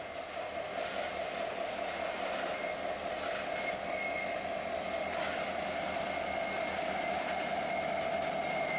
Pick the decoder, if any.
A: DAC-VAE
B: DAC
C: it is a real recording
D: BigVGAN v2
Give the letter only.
C